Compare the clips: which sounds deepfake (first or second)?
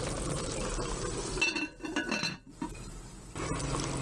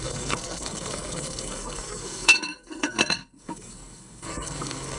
second